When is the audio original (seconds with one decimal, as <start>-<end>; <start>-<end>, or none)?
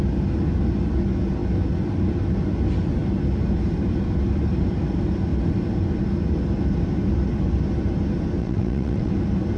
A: 0.0-8.4; 9.1-9.6